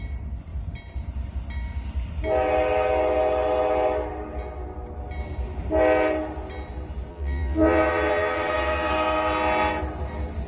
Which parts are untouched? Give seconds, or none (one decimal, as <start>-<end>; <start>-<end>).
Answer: 0.0-7.1; 8.9-10.5